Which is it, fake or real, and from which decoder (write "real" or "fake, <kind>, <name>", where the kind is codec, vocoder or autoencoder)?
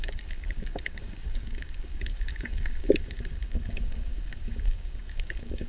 fake, codec, DAC